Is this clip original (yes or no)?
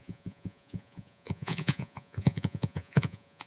no